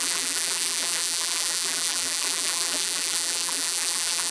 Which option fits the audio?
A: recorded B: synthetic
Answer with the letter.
B